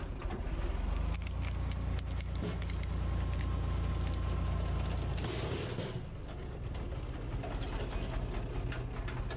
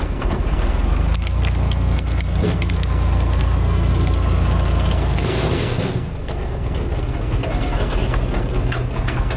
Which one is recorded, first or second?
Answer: first